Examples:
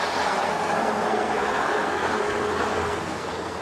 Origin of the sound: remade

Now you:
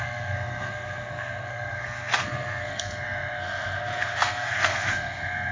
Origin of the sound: remade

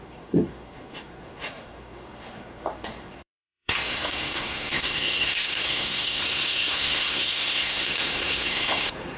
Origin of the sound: remade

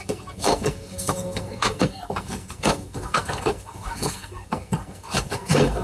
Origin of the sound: remade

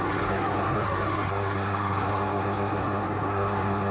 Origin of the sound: remade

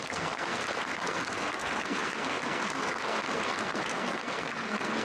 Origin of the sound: remade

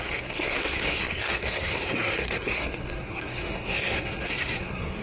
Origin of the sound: remade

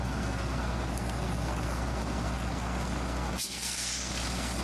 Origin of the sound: remade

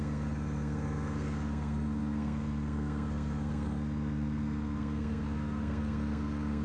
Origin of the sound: remade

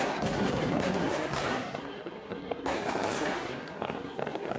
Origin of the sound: remade